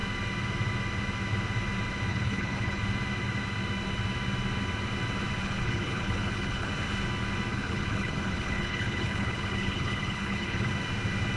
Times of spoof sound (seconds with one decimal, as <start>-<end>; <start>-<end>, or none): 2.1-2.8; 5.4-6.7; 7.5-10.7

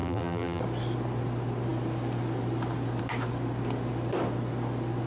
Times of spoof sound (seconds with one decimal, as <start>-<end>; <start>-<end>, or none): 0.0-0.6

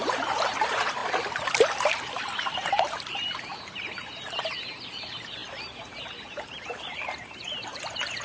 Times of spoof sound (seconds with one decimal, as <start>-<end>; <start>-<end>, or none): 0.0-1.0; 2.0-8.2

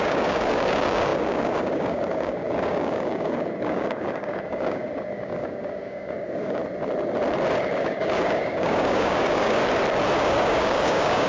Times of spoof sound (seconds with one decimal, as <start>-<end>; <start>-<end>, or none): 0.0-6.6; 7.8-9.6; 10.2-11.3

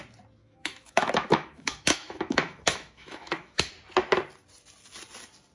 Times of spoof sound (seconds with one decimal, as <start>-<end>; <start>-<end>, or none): 0.4-3.7

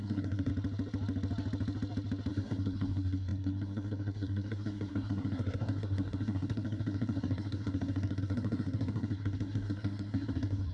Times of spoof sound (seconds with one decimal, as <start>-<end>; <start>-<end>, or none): 0.0-0.5; 2.3-10.7